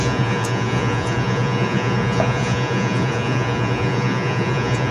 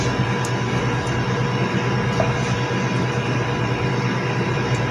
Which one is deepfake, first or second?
first